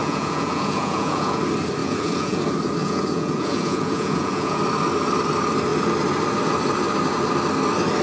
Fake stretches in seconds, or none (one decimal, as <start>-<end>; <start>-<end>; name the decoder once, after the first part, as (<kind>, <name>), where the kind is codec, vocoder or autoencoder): 0.0-1.4 (vocoder, Vocos); 1.8-2.4; 2.8-4.6